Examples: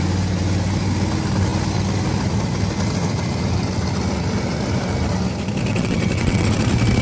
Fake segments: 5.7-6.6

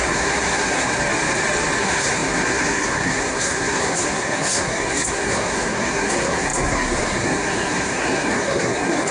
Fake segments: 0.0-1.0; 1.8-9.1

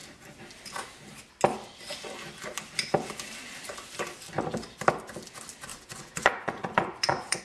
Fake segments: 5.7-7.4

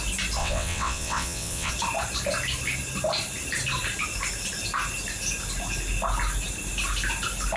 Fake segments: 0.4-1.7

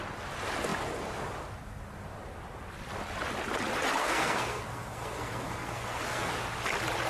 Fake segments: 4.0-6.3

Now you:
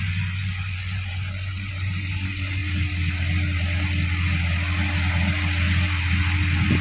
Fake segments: 0.0-2.6

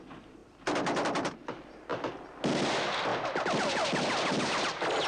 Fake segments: 0.4-1.3